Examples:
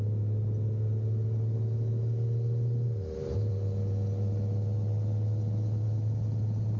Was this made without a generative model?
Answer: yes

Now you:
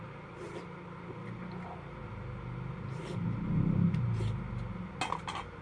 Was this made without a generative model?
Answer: yes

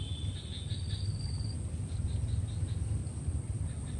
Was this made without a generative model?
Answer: yes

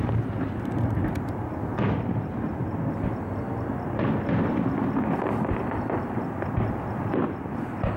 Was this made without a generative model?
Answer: yes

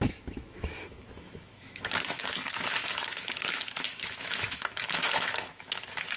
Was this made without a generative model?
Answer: no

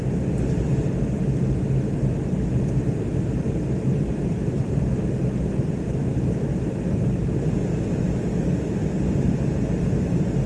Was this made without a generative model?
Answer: yes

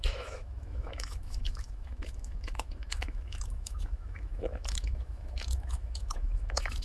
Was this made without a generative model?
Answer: no